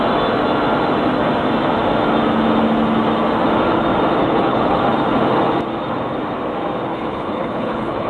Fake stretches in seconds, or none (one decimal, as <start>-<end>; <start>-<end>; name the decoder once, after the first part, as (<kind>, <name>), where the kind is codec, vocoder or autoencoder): 4.2-4.8 (codec, HILCodec); 6.9-8.1